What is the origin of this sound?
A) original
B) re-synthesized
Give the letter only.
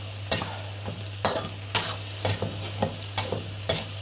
A